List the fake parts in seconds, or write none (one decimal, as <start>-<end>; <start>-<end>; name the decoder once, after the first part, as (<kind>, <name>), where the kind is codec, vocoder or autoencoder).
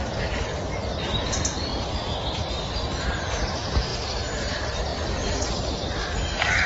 none